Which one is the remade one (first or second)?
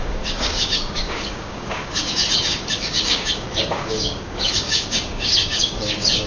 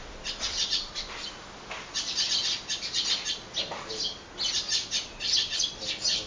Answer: first